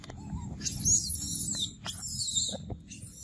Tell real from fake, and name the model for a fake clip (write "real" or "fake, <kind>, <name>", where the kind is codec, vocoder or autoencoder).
real